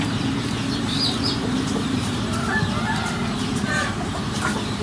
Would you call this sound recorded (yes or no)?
no